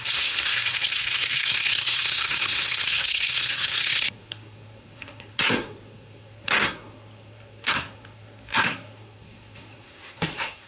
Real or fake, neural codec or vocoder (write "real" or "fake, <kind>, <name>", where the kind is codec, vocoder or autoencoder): fake, codec, SNAC